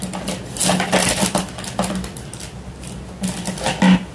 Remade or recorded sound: recorded